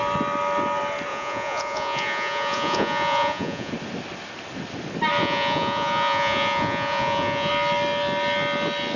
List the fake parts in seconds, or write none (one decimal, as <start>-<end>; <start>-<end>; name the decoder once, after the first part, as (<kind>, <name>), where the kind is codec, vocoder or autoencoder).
1.1-3.7 (vocoder, Vocos); 5.2-7.5